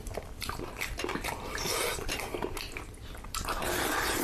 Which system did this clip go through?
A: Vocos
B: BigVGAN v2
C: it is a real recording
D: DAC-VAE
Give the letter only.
B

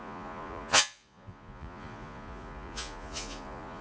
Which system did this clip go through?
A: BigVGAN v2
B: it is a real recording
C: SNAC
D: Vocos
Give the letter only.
D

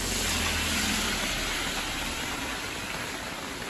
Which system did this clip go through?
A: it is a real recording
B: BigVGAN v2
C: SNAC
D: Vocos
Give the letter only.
A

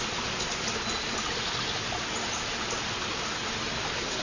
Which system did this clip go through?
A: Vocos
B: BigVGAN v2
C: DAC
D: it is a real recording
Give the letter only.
D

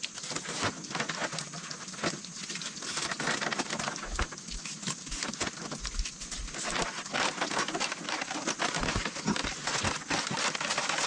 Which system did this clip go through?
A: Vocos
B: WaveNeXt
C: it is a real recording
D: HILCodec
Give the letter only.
C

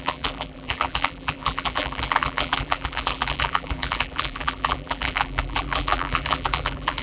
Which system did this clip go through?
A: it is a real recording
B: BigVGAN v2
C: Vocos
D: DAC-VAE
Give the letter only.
B